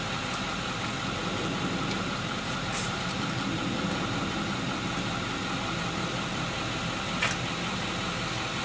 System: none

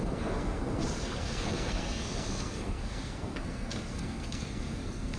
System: codec, SNAC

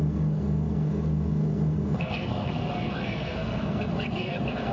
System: codec, SNAC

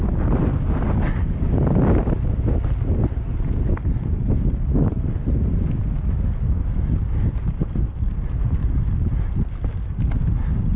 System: none